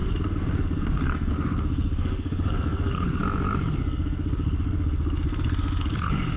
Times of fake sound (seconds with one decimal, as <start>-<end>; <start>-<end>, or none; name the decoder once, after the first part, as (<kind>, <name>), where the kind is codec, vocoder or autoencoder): 0.0-3.2 (codec, SNAC); 3.7-6.4

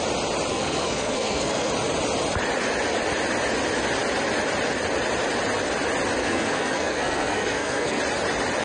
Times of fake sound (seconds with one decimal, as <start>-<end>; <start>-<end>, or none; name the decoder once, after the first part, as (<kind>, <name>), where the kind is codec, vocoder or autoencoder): 0.5-1.7 (codec, SNAC); 6.2-8.0

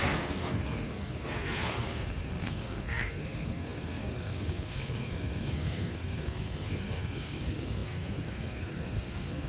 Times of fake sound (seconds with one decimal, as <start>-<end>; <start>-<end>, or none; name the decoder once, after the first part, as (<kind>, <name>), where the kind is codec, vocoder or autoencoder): 0.0-9.5 (codec, SNAC)

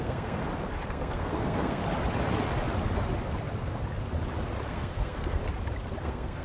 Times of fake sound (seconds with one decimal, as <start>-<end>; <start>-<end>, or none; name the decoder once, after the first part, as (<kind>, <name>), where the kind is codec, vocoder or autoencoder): 0.0-0.4 (codec, SNAC); 0.9-1.8; 4.7-5.4; 6.0-6.4

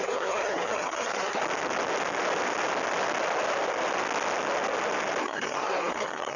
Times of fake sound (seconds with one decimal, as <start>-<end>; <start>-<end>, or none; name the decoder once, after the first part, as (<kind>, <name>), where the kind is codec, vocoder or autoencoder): 0.0-1.4 (codec, SNAC); 5.2-6.4